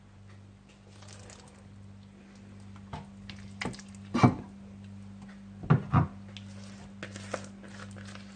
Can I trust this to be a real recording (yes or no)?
yes